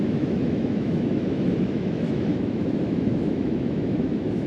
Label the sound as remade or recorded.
remade